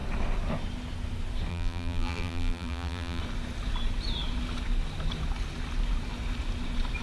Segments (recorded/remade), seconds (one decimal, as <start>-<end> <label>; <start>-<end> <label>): 0.0-1.5 recorded; 1.5-3.2 remade; 3.2-7.0 recorded